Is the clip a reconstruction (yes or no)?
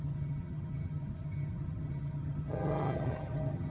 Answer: yes